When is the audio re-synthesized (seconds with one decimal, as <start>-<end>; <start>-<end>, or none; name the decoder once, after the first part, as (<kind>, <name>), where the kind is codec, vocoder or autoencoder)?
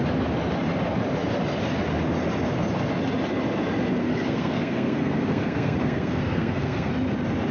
4.0-6.9 (codec, SNAC)